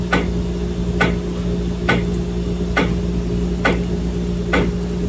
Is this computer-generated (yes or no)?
no